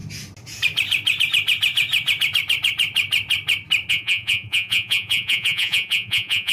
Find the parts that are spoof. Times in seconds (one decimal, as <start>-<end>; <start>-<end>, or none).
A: 3.9-6.5